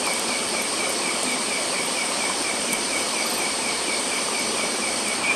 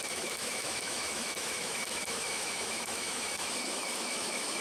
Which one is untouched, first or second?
first